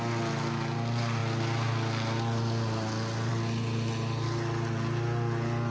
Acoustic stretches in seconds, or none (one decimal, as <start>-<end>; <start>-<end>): 0.0-5.7